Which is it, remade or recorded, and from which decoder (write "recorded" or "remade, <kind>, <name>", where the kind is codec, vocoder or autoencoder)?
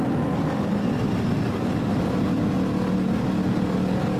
recorded